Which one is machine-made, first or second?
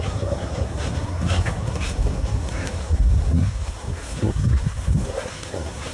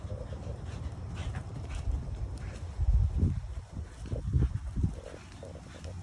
first